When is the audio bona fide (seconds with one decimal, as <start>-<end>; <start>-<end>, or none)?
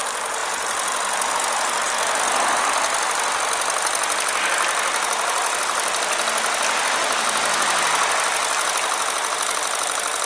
0.0-10.3